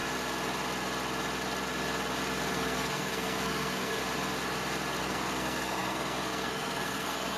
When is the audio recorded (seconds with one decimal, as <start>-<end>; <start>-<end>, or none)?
0.0-2.5; 4.0-5.0